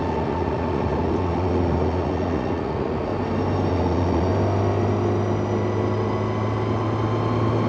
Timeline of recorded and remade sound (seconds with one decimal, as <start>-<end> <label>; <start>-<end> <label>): 0.0-3.1 remade; 3.1-3.7 recorded; 3.7-4.3 remade; 4.3-7.7 recorded

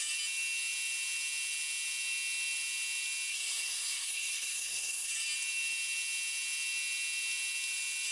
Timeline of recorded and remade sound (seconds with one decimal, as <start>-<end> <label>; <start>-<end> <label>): 0.0-3.3 recorded; 3.3-5.1 remade; 5.1-8.1 recorded